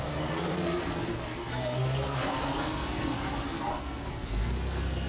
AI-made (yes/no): yes